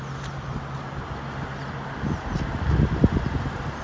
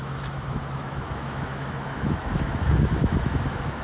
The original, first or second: first